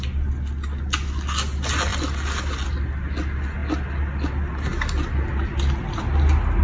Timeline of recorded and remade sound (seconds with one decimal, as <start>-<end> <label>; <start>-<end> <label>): 0.0-6.6 recorded